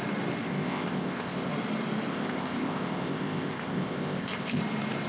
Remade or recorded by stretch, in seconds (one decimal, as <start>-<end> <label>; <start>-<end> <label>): 0.0-0.4 recorded; 0.4-1.5 remade; 1.5-2.1 recorded; 2.1-4.6 remade; 4.6-5.1 recorded